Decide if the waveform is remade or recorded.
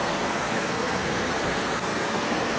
remade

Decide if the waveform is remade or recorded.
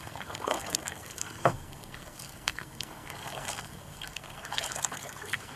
remade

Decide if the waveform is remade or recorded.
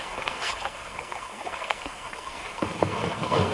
remade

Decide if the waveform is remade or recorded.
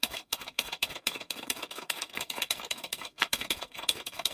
remade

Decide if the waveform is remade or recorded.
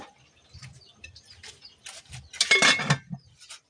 recorded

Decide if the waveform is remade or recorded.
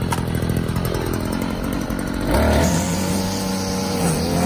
recorded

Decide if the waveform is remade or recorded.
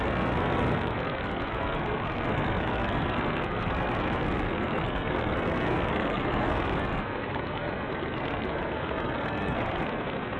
remade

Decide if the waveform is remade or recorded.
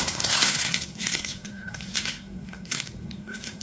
remade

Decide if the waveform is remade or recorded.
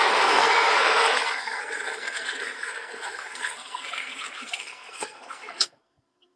remade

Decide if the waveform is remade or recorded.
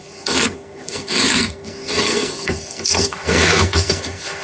remade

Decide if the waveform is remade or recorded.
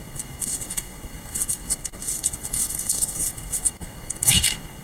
remade